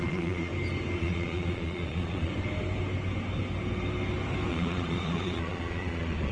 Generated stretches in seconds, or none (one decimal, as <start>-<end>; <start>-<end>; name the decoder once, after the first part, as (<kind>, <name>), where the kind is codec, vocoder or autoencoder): 0.0-0.5 (vocoder, Vocos); 1.0-2.3; 4.5-6.3